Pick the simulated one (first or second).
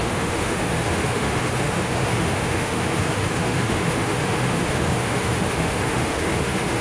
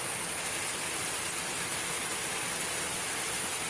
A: first